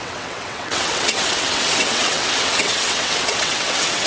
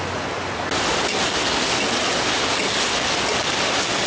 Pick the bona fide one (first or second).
second